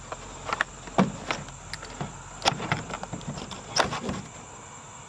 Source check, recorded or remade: recorded